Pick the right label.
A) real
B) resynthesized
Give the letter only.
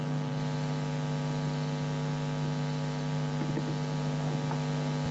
A